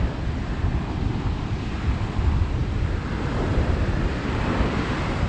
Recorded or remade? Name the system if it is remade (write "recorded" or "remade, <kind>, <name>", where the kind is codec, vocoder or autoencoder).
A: remade, vocoder, BigVGAN v2